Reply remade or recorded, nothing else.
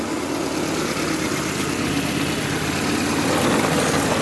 recorded